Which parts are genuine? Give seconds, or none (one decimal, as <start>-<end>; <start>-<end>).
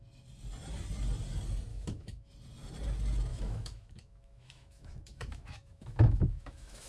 0.0-1.7; 2.3-3.3